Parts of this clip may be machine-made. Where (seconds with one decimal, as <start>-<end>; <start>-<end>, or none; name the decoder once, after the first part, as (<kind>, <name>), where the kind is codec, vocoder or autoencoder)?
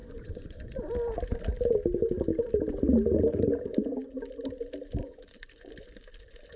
0.0-0.8 (vocoder, Vocos); 5.0-5.7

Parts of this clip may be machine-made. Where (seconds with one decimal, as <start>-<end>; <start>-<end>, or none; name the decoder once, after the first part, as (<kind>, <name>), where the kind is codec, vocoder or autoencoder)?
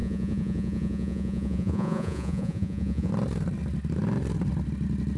0.0-3.1 (vocoder, Vocos)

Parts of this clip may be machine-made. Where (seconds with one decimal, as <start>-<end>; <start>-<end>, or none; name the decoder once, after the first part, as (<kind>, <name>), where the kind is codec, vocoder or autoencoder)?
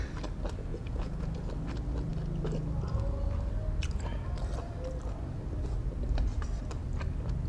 0.7-1.5 (vocoder, Vocos)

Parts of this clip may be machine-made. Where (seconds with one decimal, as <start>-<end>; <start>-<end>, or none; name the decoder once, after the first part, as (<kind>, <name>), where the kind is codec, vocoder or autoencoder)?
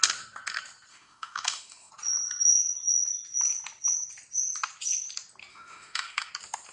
0.9-1.9 (autoencoder, DAC-VAE); 5.5-6.3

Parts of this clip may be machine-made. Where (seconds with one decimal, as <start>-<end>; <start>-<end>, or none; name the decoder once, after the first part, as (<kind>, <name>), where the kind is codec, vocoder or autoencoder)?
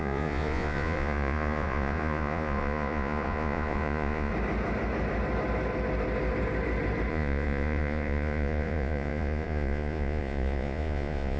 0.0-4.3 (vocoder, Vocos); 7.1-11.4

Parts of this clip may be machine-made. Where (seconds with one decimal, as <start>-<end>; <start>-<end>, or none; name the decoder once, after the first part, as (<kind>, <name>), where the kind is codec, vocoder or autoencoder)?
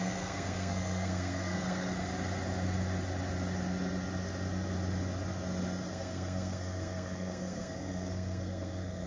0.0-2.1 (codec, SNAC); 5.9-9.1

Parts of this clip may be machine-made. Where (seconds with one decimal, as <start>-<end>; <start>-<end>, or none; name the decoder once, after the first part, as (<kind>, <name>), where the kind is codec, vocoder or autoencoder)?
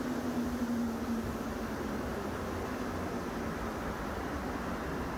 none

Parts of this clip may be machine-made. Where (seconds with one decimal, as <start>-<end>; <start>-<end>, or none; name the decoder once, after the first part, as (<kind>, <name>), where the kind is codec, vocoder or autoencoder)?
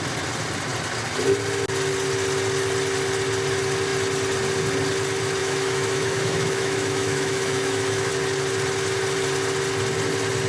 5.4-8.1 (autoencoder, DAC-VAE)